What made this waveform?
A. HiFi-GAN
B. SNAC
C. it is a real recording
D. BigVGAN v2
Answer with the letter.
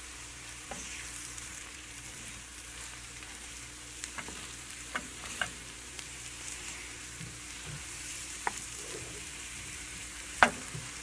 D